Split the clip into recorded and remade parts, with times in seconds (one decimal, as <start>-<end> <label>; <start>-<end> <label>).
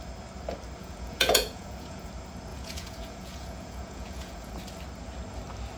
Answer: 0.0-0.8 recorded; 0.8-2.1 remade; 2.1-2.5 recorded; 2.5-4.5 remade; 4.5-5.8 recorded